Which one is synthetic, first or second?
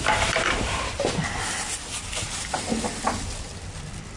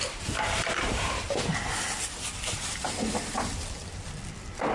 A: second